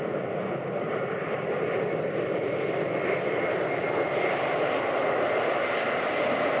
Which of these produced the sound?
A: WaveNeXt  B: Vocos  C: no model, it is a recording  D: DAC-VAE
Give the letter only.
C